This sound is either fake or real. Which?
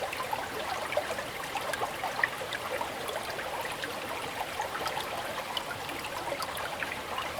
real